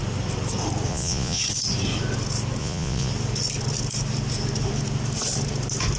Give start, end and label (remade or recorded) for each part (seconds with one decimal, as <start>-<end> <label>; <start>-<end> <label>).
0.0-0.9 recorded; 0.9-1.4 remade; 1.4-2.6 recorded; 2.6-3.1 remade; 3.1-6.0 recorded